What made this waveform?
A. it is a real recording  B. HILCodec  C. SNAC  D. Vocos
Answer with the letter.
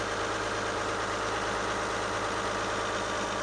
A